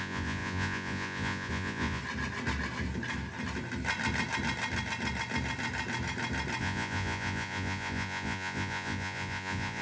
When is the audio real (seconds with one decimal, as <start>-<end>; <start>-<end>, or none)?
2.0-6.6